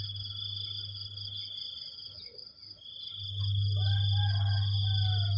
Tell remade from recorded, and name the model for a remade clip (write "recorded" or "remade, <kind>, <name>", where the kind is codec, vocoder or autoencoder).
recorded